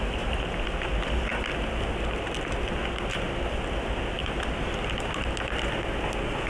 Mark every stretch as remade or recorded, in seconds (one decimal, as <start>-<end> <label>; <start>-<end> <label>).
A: 0.0-6.5 recorded